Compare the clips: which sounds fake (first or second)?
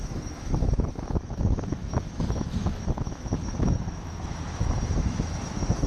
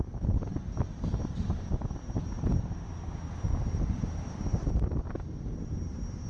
first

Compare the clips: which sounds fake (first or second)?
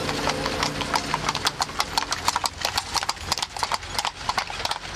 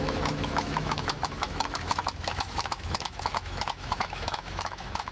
second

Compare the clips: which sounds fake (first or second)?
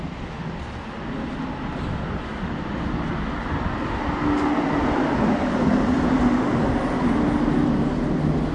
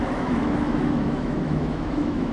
second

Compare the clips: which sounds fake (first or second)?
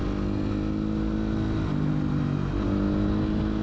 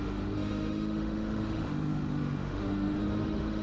second